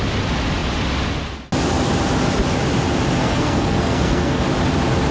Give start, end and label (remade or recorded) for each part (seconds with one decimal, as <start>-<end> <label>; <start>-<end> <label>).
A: 0.0-3.2 recorded; 3.2-4.4 remade; 4.4-5.1 recorded